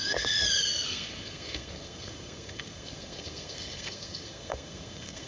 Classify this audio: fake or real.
fake